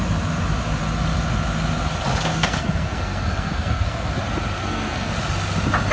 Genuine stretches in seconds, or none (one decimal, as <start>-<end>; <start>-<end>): 0.0-2.3; 4.1-4.6; 5.1-5.9